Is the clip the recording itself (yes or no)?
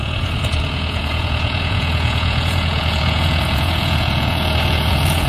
no